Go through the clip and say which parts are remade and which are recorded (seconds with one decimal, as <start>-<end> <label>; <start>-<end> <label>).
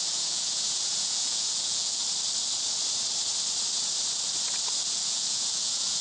0.0-2.0 remade; 2.0-4.9 recorded; 4.9-6.0 remade